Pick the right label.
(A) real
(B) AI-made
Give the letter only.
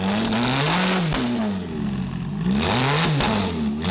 A